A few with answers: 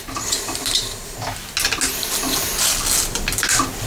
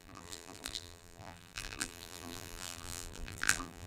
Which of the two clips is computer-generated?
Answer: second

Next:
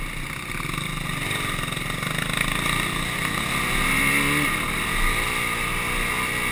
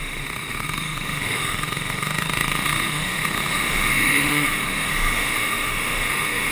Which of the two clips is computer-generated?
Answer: second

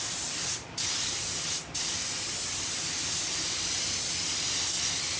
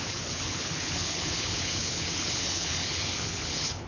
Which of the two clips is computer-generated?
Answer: second